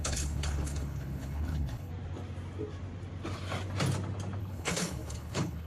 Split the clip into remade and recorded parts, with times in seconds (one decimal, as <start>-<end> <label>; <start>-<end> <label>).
0.0-1.9 remade; 1.9-4.4 recorded; 4.4-5.7 remade